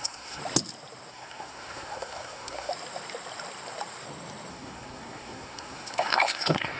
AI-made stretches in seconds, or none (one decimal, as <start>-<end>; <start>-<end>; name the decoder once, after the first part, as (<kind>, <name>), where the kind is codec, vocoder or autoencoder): 0.0-0.4 (codec, SNAC); 1.1-2.7; 4.5-6.8